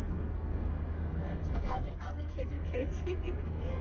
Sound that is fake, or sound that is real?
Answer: fake